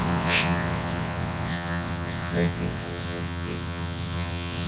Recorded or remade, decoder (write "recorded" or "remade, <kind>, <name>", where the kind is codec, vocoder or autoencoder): remade, vocoder, WaveNeXt